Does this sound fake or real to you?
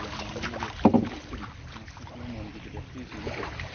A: real